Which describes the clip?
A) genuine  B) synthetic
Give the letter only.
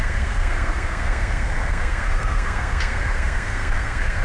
B